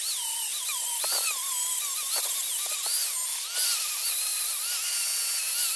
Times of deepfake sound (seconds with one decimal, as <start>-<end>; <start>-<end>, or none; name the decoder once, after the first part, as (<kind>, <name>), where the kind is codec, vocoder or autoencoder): none